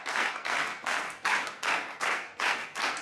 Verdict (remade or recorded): remade